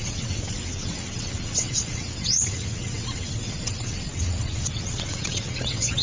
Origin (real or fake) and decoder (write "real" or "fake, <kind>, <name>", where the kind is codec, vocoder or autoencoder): fake, vocoder, WaveNeXt